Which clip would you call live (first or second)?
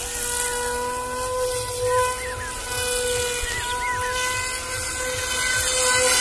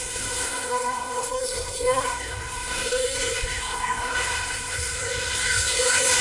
first